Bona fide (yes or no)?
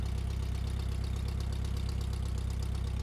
yes